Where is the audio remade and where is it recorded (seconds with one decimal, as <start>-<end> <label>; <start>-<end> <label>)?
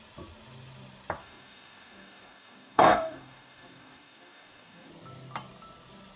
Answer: 0.0-1.2 recorded; 1.2-4.9 remade; 4.9-6.2 recorded